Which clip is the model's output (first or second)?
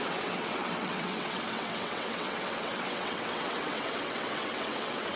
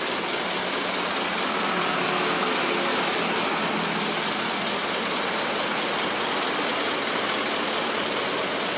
first